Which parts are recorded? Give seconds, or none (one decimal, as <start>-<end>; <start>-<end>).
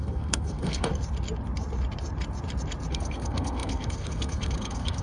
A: 0.9-2.9